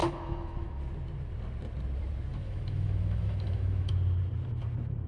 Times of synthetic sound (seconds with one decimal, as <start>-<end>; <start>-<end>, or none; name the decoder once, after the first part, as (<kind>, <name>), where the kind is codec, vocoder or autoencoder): 0.0-0.8 (autoencoder, DAC-VAE); 2.3-3.9

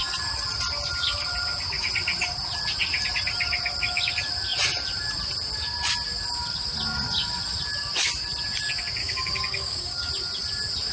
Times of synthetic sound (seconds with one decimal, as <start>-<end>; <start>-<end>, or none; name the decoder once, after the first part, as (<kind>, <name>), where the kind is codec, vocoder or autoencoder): 9.0-10.1 (codec, DAC)

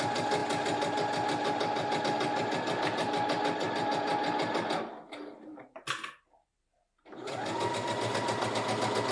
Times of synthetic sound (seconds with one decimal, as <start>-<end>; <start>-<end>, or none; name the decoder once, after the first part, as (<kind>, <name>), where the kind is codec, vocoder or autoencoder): none